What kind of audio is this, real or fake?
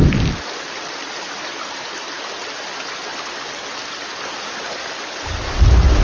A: real